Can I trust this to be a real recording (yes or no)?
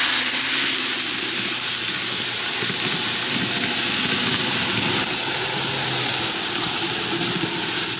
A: yes